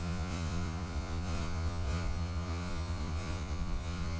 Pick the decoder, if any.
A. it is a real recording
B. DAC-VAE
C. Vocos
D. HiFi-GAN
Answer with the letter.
C